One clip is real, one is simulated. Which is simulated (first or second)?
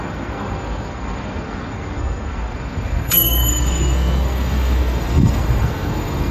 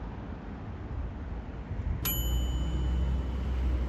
first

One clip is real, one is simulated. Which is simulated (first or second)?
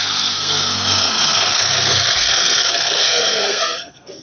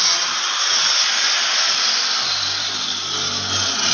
first